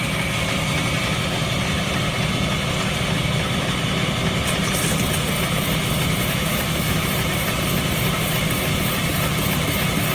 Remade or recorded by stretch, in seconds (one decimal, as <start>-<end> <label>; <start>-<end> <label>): 0.0-6.5 recorded; 6.5-7.1 remade; 7.1-10.1 recorded